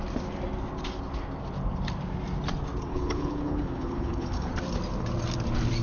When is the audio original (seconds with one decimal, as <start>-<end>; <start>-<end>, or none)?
0.0-2.9; 4.5-5.8